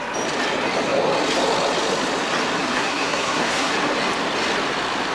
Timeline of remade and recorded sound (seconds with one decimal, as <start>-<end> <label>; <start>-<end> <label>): 0.0-2.6 recorded; 2.6-3.7 remade; 3.7-5.1 recorded